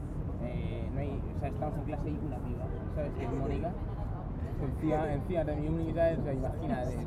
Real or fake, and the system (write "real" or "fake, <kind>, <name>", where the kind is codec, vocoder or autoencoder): real